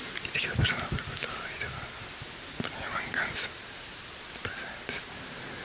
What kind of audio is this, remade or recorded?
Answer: recorded